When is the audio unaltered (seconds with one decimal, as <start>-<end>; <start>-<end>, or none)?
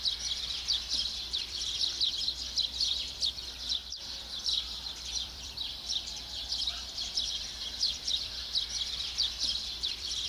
3.8-4.4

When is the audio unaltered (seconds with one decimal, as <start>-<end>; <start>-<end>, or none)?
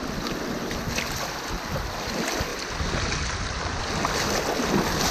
0.0-5.1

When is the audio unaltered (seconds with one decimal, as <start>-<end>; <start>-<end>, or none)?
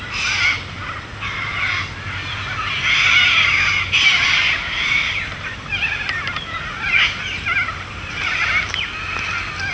0.0-4.1; 8.2-9.7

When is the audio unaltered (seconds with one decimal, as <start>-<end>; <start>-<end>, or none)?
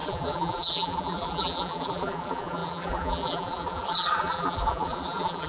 none